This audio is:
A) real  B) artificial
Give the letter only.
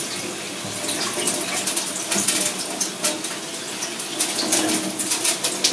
A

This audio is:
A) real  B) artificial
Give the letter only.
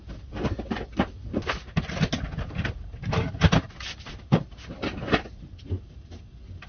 A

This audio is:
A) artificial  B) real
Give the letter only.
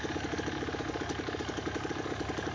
A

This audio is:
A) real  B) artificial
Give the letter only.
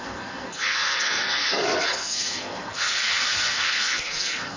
B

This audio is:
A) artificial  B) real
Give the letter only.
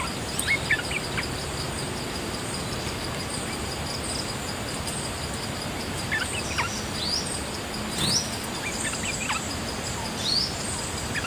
B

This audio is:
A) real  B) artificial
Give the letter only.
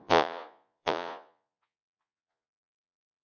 B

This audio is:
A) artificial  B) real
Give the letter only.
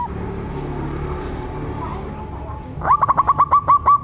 B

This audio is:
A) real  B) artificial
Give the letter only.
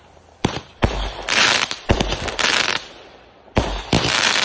A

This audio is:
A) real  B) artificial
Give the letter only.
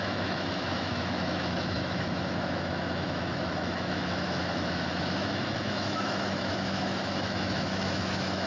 B